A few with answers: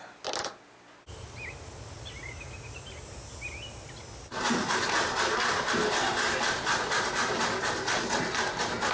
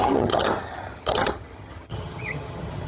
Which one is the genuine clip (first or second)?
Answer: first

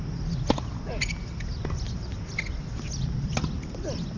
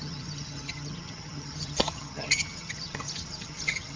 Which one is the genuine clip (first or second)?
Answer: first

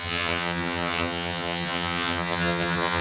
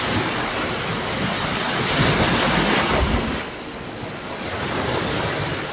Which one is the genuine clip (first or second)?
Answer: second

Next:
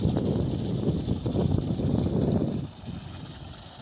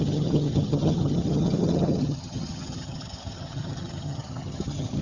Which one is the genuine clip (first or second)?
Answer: first